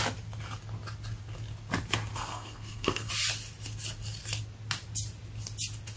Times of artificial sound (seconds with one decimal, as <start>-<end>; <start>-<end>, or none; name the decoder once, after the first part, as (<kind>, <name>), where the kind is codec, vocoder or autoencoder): 2.1-3.1 (codec, SNAC)